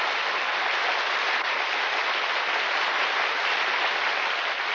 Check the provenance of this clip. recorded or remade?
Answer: recorded